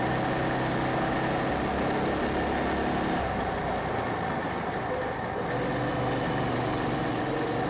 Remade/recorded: recorded